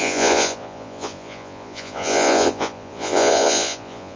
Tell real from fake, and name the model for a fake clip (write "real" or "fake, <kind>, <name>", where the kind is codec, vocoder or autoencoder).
fake, vocoder, Vocos